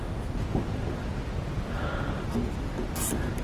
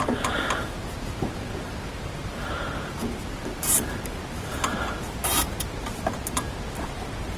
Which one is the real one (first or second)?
first